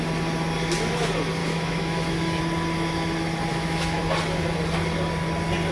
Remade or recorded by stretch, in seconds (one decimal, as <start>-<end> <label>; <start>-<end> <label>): 0.0-1.4 recorded; 1.4-2.4 remade; 2.4-3.5 recorded; 3.5-4.0 remade; 4.0-5.7 recorded